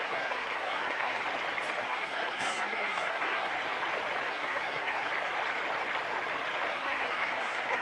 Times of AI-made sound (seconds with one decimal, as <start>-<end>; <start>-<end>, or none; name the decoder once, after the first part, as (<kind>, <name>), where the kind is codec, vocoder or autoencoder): 0.0-1.2 (codec, SNAC); 1.8-3.5; 4.3-5.1; 6.7-7.8